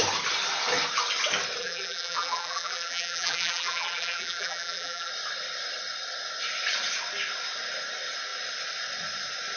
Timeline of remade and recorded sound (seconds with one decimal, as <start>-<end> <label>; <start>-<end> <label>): 0.0-1.6 recorded; 1.6-5.1 remade; 5.1-9.6 recorded